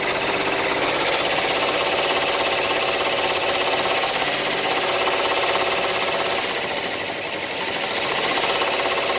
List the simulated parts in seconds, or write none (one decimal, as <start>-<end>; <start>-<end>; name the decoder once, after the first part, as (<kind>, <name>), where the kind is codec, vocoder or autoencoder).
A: none